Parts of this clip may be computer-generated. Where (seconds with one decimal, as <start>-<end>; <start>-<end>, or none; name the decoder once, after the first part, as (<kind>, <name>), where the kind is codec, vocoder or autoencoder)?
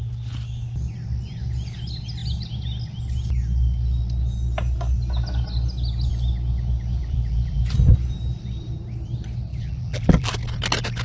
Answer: 7.0-7.6 (vocoder, BigVGAN v2); 9.5-10.3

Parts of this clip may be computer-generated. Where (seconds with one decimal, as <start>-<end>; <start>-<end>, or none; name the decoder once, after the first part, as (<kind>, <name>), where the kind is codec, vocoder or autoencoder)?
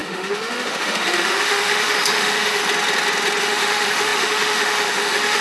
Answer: 0.0-2.6 (autoencoder, DAC-VAE); 3.4-5.4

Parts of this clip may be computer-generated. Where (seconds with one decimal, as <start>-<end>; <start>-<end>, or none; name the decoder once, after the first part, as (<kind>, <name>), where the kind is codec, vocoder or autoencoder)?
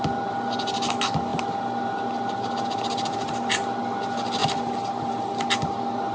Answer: none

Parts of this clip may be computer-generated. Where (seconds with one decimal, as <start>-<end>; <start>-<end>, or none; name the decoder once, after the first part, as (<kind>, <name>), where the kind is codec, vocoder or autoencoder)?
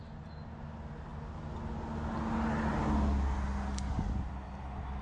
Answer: none